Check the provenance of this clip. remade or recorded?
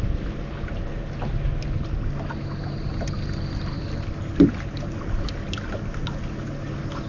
recorded